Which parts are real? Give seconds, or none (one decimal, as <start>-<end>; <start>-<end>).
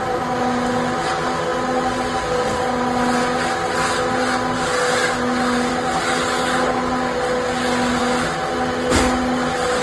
0.0-9.8